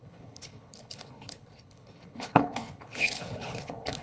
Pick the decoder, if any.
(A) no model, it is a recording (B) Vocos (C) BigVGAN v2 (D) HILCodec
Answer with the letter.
D